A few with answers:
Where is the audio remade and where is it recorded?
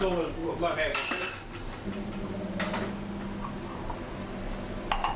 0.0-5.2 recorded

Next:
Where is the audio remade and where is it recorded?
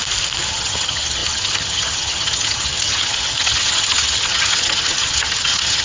0.0-0.5 recorded; 0.5-5.8 remade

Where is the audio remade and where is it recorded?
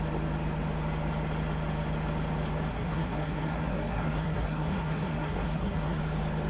0.0-2.7 recorded; 2.7-6.0 remade; 6.0-6.5 recorded